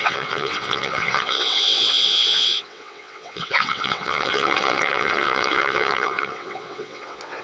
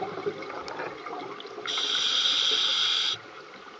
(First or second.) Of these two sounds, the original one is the second